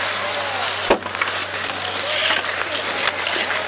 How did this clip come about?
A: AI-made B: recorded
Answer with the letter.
B